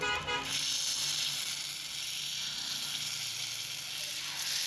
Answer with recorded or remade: recorded